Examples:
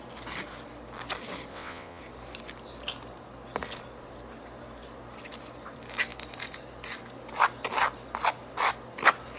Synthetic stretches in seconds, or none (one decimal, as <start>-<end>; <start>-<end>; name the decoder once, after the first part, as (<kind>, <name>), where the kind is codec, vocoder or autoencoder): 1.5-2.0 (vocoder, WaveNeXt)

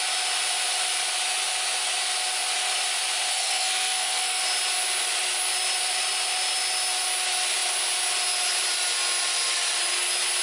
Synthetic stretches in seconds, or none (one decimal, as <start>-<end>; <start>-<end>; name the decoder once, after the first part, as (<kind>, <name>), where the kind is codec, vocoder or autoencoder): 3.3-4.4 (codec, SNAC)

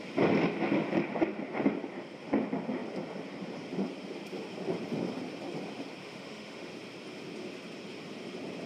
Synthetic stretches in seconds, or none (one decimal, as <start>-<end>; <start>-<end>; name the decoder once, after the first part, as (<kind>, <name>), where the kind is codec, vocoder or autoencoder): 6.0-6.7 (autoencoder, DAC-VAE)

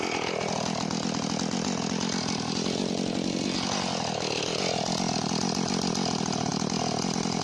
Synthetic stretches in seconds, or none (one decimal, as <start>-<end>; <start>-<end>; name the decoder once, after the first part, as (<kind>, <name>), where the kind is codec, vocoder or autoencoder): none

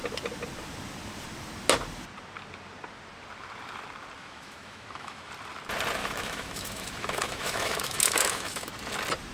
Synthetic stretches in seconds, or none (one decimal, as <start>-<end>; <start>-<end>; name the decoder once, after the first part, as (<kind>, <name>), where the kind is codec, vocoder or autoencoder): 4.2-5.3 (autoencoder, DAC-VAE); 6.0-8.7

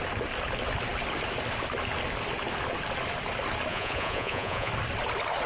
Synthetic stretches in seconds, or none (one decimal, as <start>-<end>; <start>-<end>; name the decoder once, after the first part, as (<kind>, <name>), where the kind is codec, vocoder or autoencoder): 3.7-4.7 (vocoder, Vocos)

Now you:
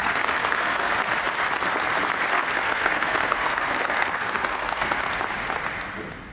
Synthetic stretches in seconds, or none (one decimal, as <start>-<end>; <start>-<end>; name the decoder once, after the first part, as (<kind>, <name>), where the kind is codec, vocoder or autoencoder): 0.0-0.9 (codec, SNAC); 2.3-5.1